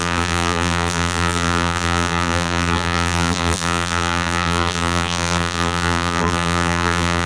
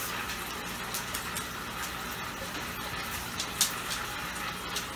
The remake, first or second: first